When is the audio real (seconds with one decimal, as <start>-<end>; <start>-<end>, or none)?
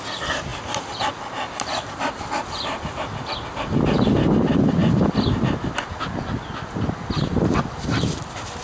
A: 0.0-8.6